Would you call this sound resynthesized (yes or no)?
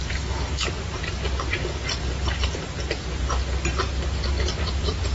no